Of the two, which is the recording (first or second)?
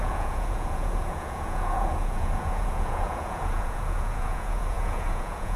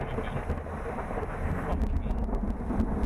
second